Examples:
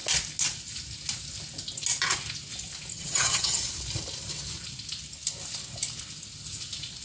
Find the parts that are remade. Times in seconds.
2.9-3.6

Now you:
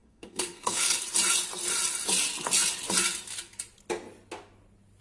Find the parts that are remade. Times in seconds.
0.0-1.0